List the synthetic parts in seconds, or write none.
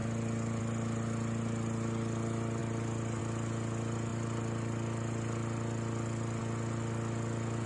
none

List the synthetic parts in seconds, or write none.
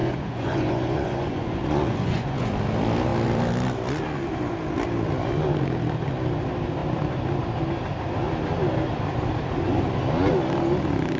0.0-2.5